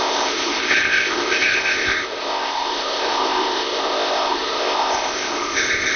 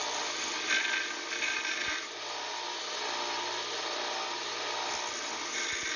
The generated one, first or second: first